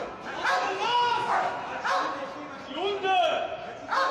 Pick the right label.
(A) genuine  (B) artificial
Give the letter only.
A